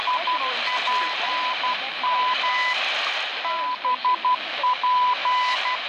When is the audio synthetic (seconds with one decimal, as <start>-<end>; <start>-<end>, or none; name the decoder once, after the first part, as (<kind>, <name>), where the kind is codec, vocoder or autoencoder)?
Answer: 1.1-3.3 (vocoder, BigVGAN v2); 4.6-5.9